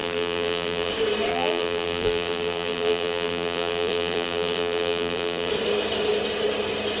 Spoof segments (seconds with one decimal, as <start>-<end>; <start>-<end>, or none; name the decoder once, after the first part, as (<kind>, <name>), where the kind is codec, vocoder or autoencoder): 0.0-0.9 (vocoder, BigVGAN v2); 1.3-5.5